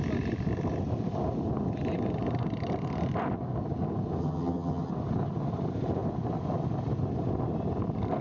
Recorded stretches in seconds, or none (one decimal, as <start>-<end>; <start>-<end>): 0.0-4.2; 4.9-8.2